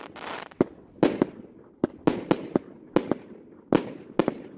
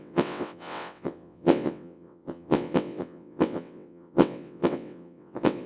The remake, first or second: second